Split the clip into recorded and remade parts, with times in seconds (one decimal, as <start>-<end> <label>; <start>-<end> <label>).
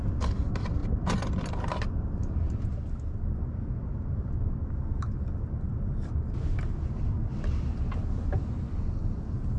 0.0-9.6 recorded